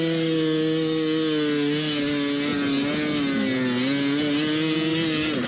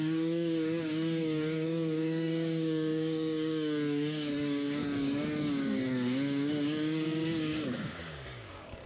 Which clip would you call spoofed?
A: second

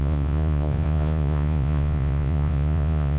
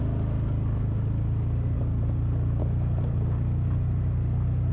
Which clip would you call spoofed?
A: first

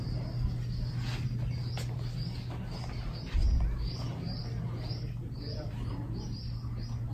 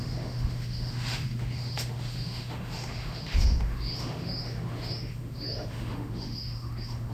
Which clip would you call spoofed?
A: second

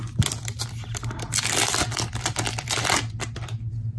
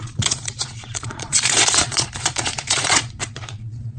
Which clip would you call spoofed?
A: second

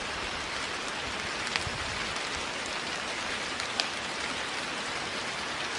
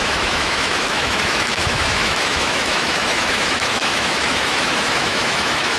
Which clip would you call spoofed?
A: second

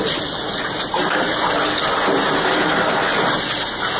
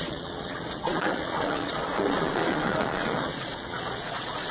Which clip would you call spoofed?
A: second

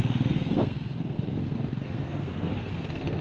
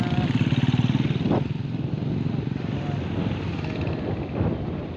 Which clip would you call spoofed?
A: first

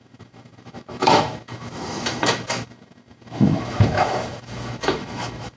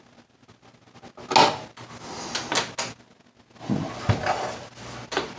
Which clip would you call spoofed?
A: first